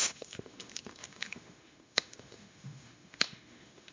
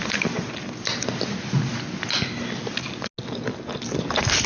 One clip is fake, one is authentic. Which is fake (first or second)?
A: first